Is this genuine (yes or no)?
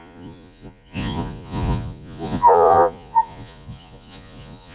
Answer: no